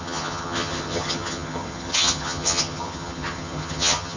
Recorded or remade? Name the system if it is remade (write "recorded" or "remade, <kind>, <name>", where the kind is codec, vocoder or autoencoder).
remade, vocoder, HiFi-GAN